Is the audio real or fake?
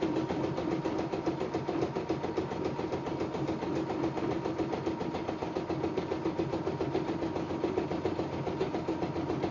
real